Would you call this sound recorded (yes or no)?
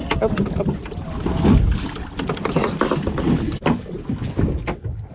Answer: yes